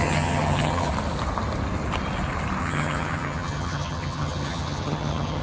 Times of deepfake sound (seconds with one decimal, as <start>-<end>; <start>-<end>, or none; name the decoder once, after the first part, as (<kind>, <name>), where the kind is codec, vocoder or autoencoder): 0.0-0.9 (vocoder, HiFi-GAN); 2.6-5.4